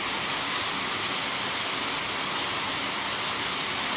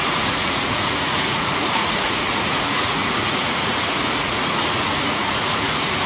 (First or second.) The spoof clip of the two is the second